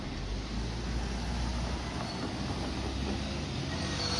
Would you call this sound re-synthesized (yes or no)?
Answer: no